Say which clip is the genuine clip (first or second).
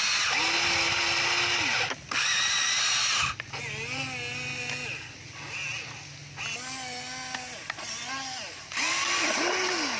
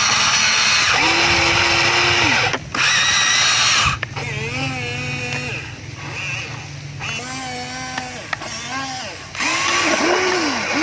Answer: second